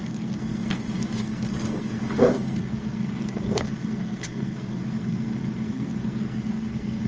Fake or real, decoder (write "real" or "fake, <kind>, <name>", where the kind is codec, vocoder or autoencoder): fake, codec, SNAC